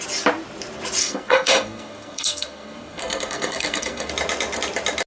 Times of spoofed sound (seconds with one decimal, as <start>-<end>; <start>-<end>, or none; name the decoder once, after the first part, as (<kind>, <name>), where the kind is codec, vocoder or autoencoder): 1.0-4.1 (codec, SNAC)